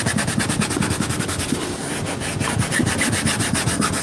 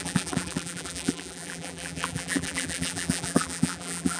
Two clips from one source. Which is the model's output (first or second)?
second